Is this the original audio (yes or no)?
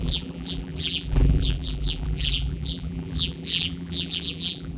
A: no